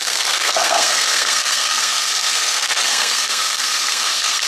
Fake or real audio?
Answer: fake